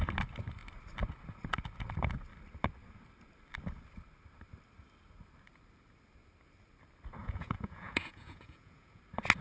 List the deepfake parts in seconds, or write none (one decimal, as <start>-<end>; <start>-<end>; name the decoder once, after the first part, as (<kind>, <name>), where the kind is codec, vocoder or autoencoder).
7.2-9.0 (vocoder, Vocos)